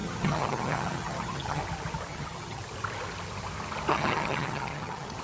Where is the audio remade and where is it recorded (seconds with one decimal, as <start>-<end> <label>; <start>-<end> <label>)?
0.0-1.6 remade; 1.6-2.1 recorded; 2.1-2.6 remade; 2.6-3.9 recorded; 3.9-5.2 remade

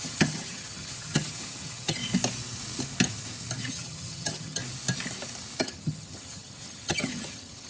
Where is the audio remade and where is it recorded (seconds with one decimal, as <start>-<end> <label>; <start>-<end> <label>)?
0.0-2.0 remade; 2.0-3.7 recorded; 3.7-4.6 remade; 4.6-5.6 recorded; 5.6-7.7 remade

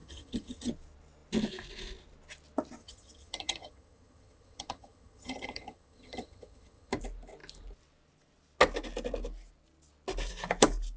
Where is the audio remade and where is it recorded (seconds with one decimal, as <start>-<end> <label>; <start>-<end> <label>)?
0.0-0.7 remade; 0.7-2.8 recorded; 2.8-6.9 remade; 6.9-11.0 recorded

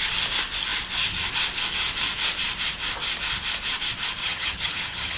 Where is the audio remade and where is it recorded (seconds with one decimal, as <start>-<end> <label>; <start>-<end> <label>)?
0.0-4.2 recorded; 4.2-5.2 remade

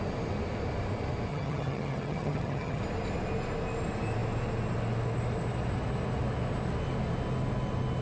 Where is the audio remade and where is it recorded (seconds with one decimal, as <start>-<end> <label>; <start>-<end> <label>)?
0.0-1.3 recorded; 1.3-2.8 remade; 2.8-8.0 recorded